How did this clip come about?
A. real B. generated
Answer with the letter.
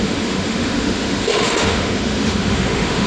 B